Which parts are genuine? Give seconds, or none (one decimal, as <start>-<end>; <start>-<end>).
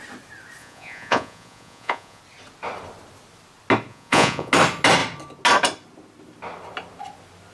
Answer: 0.0-0.6; 2.2-3.9; 4.5-7.5